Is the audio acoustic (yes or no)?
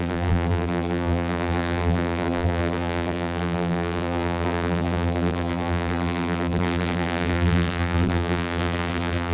no